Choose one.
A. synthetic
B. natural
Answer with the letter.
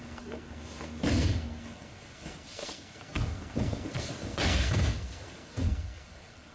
A